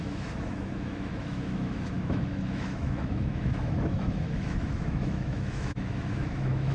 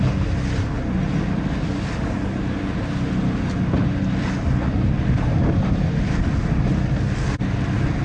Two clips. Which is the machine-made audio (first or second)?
first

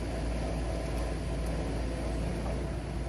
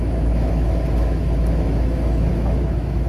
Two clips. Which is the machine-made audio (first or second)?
second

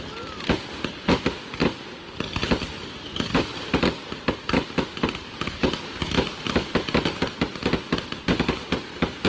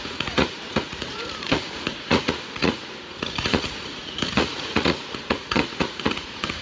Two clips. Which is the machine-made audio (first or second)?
second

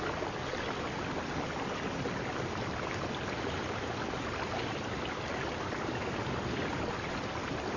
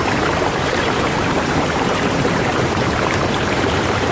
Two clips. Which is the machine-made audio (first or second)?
second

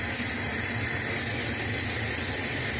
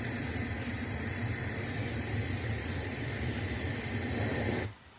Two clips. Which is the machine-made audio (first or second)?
second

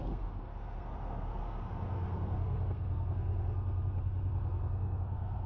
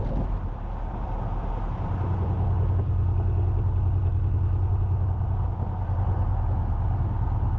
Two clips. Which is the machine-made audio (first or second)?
first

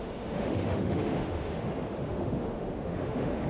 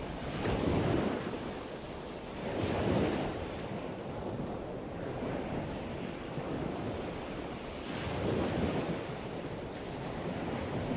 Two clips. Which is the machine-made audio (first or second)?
first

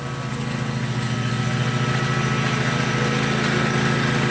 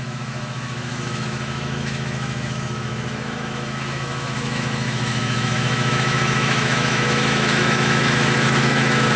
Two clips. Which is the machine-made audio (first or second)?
second